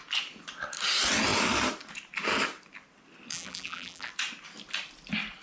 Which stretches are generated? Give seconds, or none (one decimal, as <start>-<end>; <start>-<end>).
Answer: 3.3-4.1